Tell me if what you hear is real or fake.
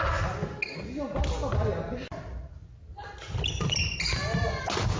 real